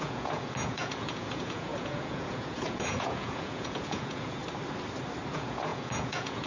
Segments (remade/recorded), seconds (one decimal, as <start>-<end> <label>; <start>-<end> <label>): 0.0-4.4 remade; 4.4-5.3 recorded; 5.3-6.5 remade